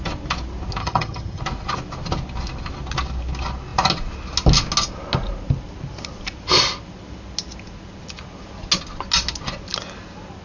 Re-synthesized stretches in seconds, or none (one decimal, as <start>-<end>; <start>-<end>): 0.8-1.4